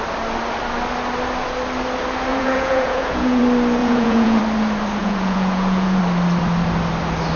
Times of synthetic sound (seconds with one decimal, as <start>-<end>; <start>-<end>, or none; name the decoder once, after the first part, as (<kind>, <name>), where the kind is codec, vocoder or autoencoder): 2.3-3.4 (vocoder, Vocos); 3.8-4.4; 5.0-6.0

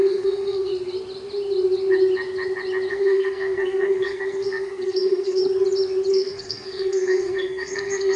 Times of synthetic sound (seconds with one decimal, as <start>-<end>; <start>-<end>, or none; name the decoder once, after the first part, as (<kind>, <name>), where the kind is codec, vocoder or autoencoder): 0.0-0.7 (codec, SNAC); 2.9-5.4; 6.1-8.2

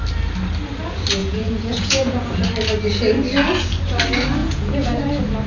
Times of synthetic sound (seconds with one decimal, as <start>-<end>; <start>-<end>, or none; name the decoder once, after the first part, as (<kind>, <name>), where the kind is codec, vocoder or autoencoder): 1.2-2.3 (vocoder, Vocos); 4.4-5.0